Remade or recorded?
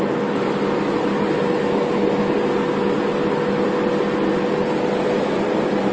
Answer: recorded